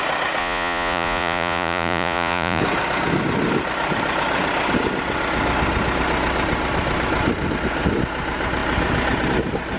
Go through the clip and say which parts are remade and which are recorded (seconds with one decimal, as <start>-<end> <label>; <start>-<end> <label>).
0.0-0.4 recorded; 0.4-2.6 remade; 2.6-9.8 recorded